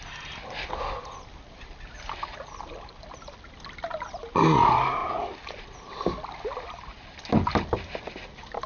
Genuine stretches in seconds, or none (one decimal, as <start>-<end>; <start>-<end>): 0.0-8.7

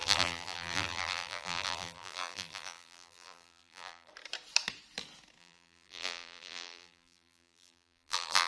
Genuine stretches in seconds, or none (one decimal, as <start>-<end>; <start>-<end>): 4.1-5.4